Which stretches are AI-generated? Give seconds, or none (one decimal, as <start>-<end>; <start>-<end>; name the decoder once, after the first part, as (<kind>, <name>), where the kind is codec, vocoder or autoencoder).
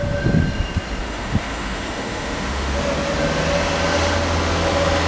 1.0-2.8 (autoencoder, DAC-VAE)